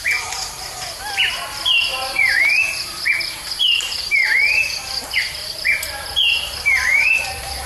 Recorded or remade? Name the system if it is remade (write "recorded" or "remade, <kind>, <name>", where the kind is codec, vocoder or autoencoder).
remade, vocoder, BigVGAN v2